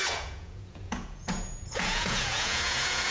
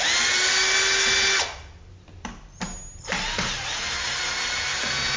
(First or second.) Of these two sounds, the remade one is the first